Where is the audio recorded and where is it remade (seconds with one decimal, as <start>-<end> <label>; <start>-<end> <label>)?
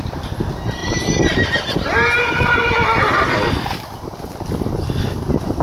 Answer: 0.0-5.6 recorded